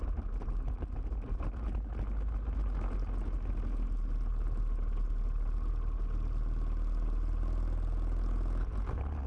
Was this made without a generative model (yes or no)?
yes